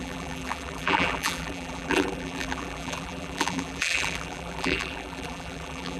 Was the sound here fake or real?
fake